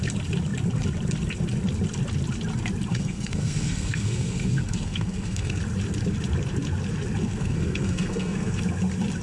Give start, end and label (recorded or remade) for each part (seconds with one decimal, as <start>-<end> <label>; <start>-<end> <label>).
0.0-2.9 recorded; 2.9-5.6 remade; 5.6-7.2 recorded; 7.2-8.6 remade; 8.6-9.2 recorded